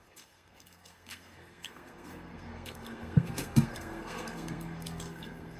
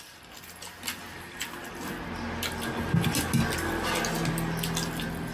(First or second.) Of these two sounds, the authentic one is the second